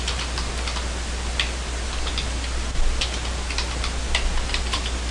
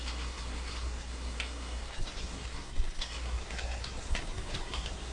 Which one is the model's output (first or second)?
second